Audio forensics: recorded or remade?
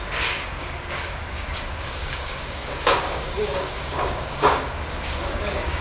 remade